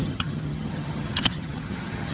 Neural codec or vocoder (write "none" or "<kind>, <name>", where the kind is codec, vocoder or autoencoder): vocoder, HiFi-GAN